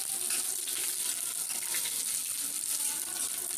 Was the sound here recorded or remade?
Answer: recorded